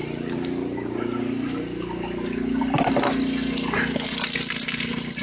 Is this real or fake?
real